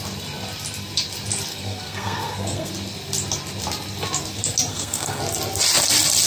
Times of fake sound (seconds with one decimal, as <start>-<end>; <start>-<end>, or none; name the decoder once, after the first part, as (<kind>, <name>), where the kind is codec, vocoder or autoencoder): 1.5-2.7 (codec, SNAC); 4.7-5.2